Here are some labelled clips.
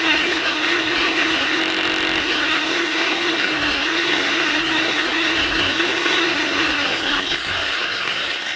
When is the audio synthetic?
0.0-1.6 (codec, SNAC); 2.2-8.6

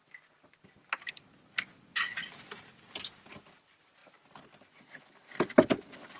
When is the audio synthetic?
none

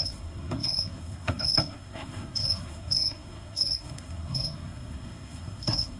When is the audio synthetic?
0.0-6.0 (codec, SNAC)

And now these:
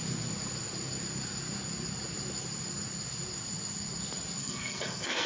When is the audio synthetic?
4.4-5.3 (codec, SNAC)

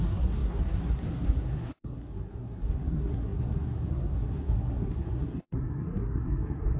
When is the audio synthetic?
0.0-6.8 (codec, SNAC)

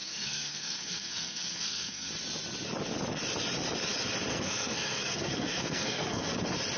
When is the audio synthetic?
0.0-2.1 (codec, SNAC); 4.3-6.3

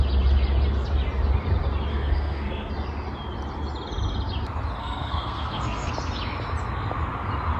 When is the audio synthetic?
1.9-2.7 (codec, SNAC); 4.8-5.9